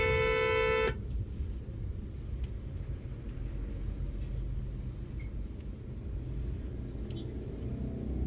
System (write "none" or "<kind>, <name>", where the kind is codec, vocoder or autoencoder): none